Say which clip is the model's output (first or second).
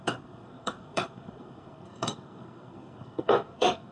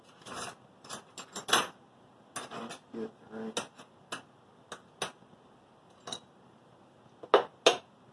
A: first